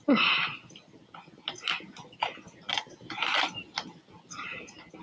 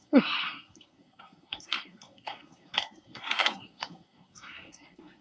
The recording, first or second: first